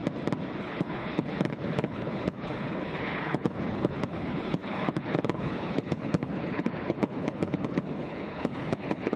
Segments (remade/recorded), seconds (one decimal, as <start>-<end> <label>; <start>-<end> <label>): 0.0-0.6 recorded; 0.6-9.2 remade